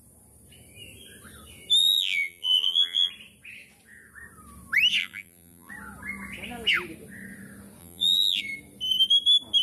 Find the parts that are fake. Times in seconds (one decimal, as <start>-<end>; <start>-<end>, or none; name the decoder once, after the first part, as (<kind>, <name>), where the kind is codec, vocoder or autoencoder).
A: 1.8-3.1 (vocoder, BigVGAN v2); 5.0-5.7; 7.8-8.4